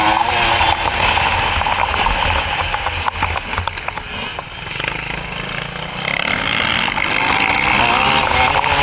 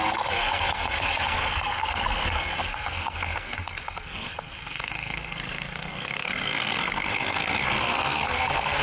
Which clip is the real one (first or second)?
first